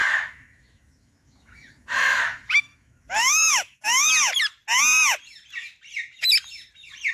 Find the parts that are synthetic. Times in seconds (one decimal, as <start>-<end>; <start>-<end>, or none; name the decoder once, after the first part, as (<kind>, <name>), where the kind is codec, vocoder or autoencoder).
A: 0.0-4.1 (autoencoder, DAC-VAE)